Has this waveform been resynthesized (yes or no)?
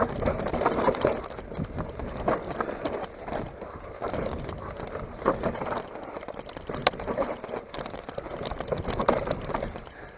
no